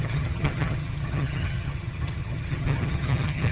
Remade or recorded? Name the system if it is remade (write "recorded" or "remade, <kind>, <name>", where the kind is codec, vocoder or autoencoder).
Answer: remade, vocoder, HiFi-GAN